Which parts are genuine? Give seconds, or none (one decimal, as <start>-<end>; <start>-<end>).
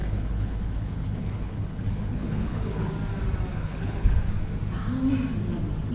2.9-3.5; 4.2-5.9